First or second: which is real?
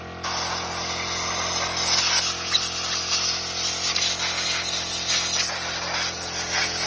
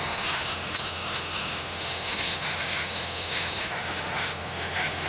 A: first